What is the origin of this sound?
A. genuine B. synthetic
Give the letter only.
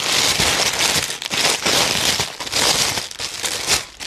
A